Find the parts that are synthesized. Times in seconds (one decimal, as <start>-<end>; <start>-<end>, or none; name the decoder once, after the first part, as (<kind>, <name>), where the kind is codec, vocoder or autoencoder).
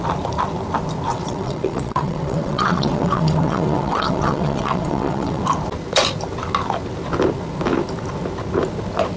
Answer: 1.1-5.4 (vocoder, WaveNeXt)